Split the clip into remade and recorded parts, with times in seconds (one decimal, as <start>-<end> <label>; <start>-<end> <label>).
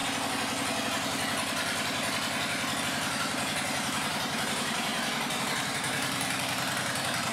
0.0-2.8 recorded; 2.8-4.9 remade; 4.9-5.4 recorded; 5.4-7.3 remade